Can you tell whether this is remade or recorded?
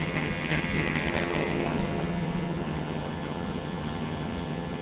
remade